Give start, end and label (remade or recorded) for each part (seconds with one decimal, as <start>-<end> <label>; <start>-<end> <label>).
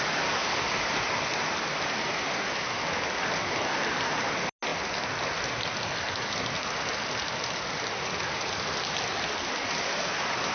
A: 0.0-10.5 recorded